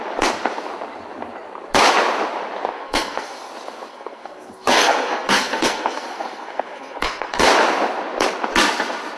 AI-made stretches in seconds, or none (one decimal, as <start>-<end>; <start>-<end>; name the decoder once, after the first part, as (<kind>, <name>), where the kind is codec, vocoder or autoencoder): 2.7-3.5 (codec, SNAC); 3.9-7.5